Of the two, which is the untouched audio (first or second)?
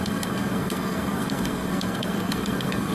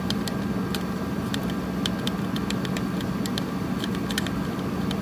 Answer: second